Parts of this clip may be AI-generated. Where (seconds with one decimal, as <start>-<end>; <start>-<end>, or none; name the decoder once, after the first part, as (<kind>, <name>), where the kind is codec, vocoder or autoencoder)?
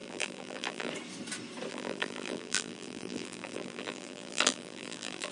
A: 0.0-0.9 (vocoder, BigVGAN v2); 1.7-5.3